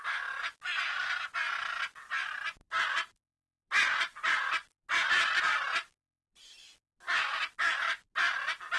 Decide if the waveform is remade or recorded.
recorded